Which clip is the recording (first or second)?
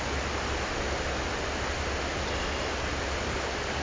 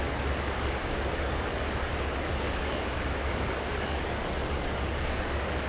first